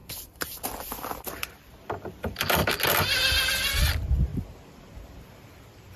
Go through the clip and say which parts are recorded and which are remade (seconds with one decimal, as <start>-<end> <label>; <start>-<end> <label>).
0.0-2.6 remade; 2.6-3.8 recorded; 3.8-4.3 remade; 4.3-5.0 recorded; 5.0-6.0 remade